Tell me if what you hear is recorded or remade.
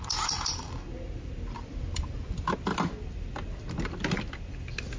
recorded